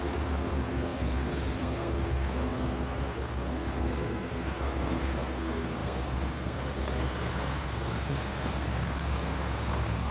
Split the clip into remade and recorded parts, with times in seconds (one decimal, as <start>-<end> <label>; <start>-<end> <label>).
0.0-10.1 remade